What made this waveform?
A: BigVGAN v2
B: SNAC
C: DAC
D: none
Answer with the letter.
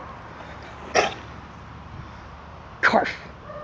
D